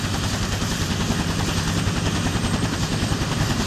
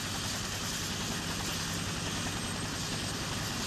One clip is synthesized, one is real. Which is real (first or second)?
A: second